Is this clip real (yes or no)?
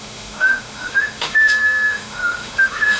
no